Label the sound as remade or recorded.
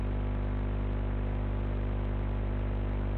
recorded